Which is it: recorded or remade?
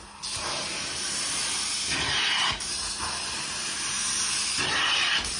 recorded